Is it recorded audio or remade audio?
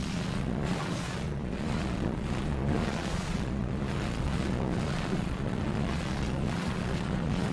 remade